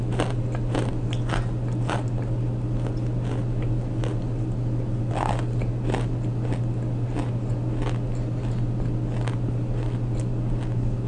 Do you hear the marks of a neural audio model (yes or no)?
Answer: no